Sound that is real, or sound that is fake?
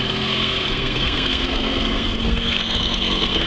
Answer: fake